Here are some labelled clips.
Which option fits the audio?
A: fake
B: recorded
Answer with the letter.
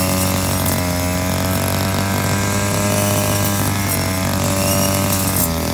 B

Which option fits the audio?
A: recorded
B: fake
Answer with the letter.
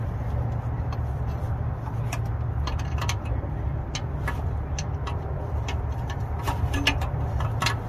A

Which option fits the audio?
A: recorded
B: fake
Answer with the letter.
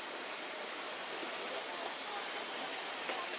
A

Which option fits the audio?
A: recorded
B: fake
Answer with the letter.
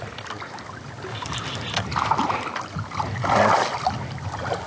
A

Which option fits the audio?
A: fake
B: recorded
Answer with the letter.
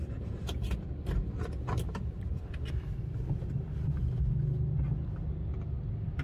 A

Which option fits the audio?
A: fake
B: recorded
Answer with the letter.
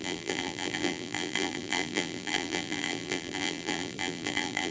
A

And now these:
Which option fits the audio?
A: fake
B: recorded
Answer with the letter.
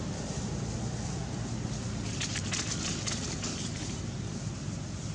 B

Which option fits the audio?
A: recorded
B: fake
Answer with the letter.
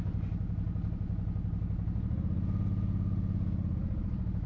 A